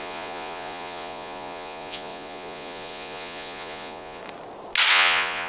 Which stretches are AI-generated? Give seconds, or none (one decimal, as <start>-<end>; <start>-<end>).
0.0-4.2; 4.9-5.5